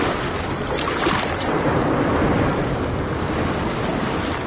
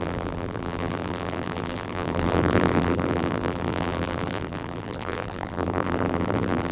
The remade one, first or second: second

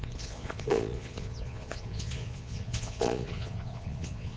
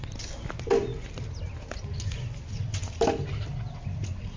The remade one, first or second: first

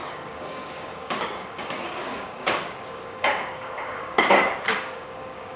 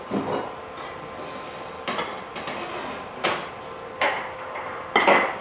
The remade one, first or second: first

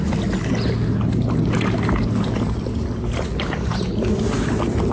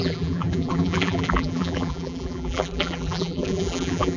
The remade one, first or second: second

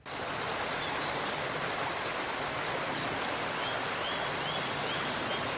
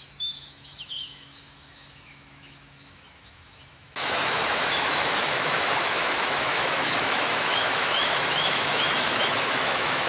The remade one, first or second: second